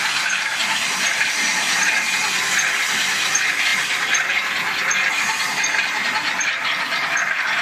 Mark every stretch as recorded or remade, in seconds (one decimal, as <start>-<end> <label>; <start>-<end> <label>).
0.0-7.6 recorded